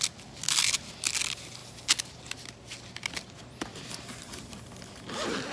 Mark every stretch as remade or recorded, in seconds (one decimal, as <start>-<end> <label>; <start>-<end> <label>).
0.0-5.5 recorded